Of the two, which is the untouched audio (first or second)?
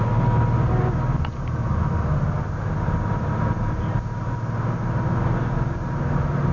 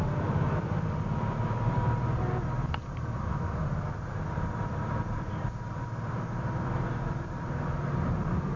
first